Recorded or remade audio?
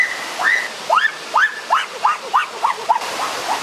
recorded